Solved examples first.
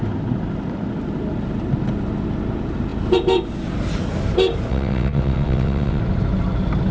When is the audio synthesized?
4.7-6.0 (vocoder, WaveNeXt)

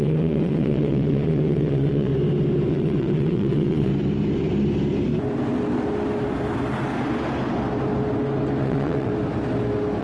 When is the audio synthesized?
0.0-2.1 (vocoder, WaveNeXt); 2.7-3.9; 8.6-9.1

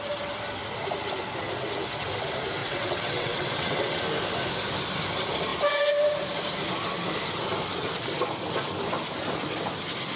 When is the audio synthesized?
2.6-4.0 (vocoder, WaveNeXt)

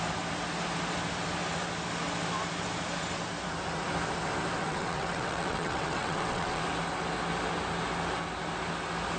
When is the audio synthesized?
4.6-6.6 (vocoder, WaveNeXt)

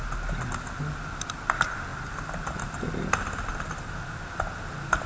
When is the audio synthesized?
none

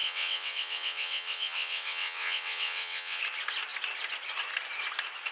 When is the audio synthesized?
0.0-3.2 (vocoder, WaveNeXt)

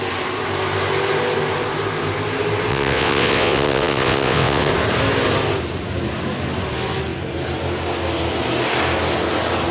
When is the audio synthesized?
2.7-4.7 (vocoder, WaveNeXt)